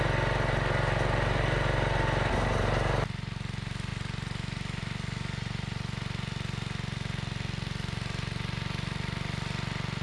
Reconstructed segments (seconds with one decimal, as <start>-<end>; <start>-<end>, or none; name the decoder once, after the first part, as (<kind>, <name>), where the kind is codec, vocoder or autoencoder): none